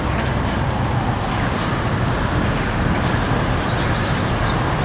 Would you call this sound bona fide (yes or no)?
yes